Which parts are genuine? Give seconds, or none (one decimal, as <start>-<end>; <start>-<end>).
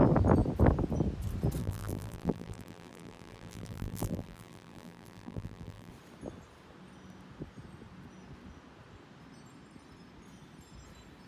0.0-1.6; 5.9-11.3